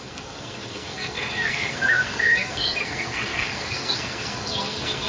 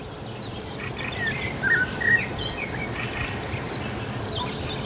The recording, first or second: second